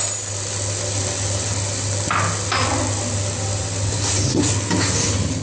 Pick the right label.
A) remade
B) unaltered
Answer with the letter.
B